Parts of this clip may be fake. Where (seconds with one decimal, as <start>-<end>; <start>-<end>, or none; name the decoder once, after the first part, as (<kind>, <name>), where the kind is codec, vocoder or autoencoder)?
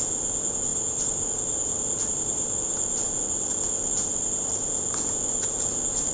none